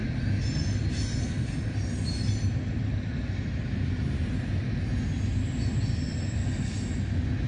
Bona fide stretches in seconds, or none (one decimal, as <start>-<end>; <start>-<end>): 0.0-7.5